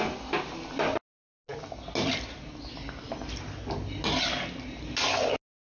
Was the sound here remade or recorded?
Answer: recorded